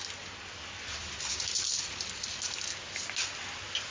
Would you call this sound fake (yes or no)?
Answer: no